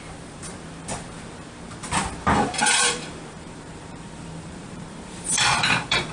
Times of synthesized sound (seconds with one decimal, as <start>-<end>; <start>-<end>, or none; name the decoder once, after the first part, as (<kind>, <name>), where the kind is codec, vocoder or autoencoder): 0.0-6.1 (vocoder, BigVGAN v2)